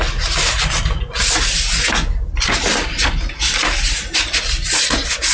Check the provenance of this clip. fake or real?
real